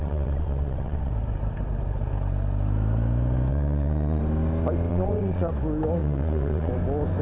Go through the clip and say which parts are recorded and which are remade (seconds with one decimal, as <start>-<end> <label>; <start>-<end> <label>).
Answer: 0.0-1.1 remade; 1.1-3.5 recorded; 3.5-4.2 remade; 4.2-4.9 recorded; 4.9-5.5 remade; 5.5-6.0 recorded; 6.0-6.7 remade; 6.7-7.2 recorded